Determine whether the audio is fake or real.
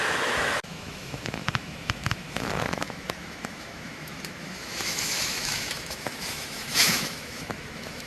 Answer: fake